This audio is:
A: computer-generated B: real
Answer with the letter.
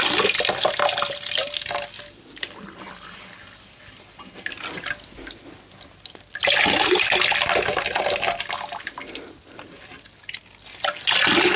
B